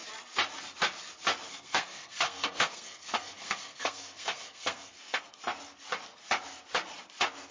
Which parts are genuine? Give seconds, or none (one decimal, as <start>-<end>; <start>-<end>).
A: 0.0-1.5; 5.4-7.5